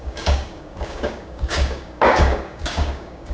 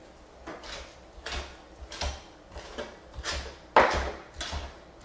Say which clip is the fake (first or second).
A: first